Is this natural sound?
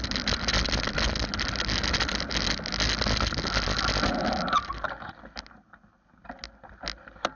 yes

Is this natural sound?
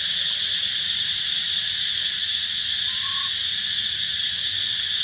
no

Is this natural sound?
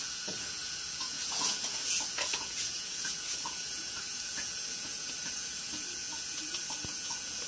no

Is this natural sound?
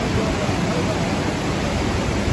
yes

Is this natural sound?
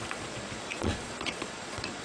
no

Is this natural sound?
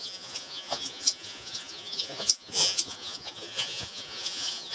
no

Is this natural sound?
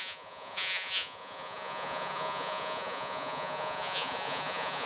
no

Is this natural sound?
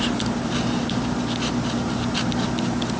yes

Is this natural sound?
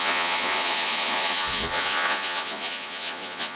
no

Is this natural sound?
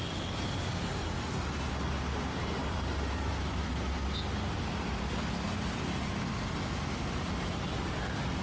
yes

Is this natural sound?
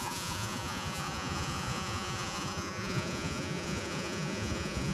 no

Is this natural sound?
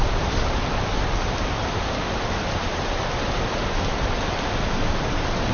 yes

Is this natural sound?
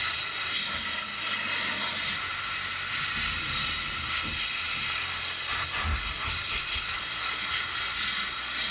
yes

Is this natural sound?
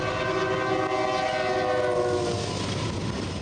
yes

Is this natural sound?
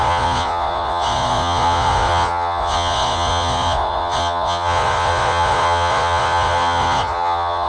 no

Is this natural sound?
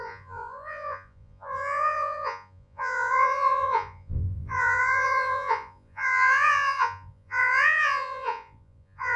no